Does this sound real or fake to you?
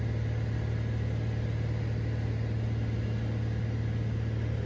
real